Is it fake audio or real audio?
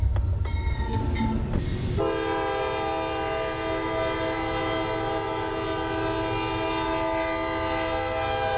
real